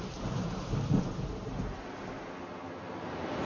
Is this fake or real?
real